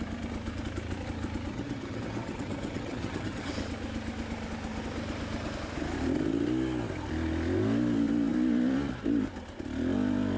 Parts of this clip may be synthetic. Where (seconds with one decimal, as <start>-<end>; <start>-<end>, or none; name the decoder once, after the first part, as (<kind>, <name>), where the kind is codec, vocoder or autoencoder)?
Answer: 1.5-3.5 (vocoder, HiFi-GAN)